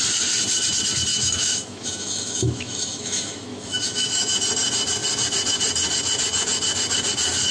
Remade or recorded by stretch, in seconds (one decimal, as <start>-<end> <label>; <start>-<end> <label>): 0.0-1.1 recorded; 1.1-4.3 remade; 4.3-7.5 recorded